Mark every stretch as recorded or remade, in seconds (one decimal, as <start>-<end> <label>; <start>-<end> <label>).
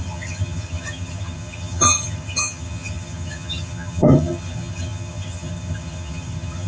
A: 0.0-6.7 remade